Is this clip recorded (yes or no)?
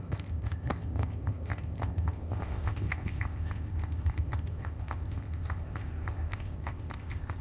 no